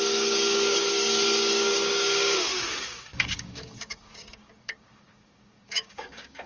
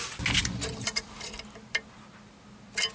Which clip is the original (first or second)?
second